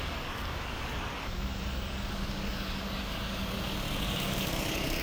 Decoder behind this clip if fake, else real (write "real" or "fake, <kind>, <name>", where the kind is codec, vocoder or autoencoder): fake, codec, DAC